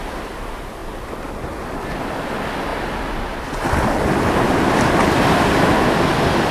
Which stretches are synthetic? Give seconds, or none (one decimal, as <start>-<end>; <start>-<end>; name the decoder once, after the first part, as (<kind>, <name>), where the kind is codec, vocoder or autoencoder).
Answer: none